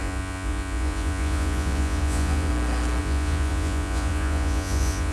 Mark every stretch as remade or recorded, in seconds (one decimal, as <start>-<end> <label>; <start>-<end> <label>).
0.0-2.5 remade; 2.5-3.0 recorded; 3.0-5.1 remade